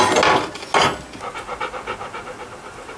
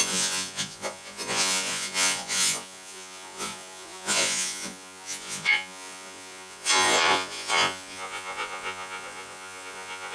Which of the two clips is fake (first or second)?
second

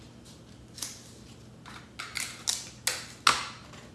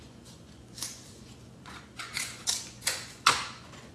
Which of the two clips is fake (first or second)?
second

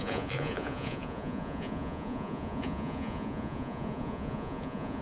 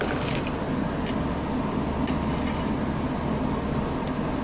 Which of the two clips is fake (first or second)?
first